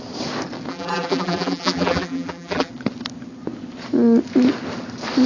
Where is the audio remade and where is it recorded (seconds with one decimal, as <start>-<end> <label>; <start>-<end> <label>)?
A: 0.0-0.7 recorded; 0.7-2.7 remade; 2.7-5.3 recorded